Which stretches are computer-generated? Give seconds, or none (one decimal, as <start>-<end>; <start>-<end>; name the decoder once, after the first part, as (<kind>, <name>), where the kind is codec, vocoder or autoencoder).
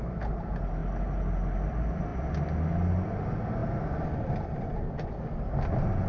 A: none